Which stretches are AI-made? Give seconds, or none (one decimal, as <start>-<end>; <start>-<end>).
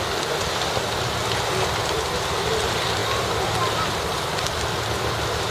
none